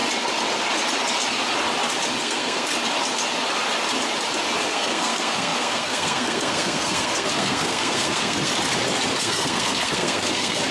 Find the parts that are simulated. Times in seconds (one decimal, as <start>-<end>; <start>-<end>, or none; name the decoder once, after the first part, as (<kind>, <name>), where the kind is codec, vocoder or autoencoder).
2.2-2.7 (codec, SNAC); 4.7-8.5; 9.2-10.7